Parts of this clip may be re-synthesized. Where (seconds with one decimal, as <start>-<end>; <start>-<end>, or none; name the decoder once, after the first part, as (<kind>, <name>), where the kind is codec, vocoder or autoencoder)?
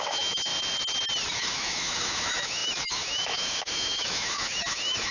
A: 0.0-0.5 (autoencoder, DAC-VAE); 1.3-5.1